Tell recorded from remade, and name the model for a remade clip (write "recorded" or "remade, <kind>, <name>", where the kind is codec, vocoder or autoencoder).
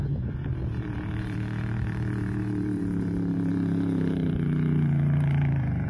remade, vocoder, BigVGAN v2